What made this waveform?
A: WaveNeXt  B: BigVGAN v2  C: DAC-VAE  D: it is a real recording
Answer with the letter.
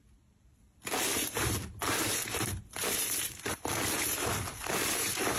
B